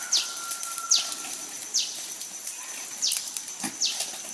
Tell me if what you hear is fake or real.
real